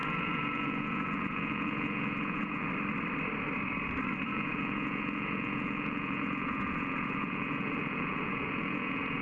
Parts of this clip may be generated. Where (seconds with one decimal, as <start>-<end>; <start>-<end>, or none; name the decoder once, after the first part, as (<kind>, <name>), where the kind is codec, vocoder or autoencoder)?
0.0-2.7 (vocoder, Vocos); 4.3-9.2